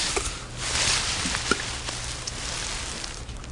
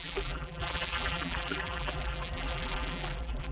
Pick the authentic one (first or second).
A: first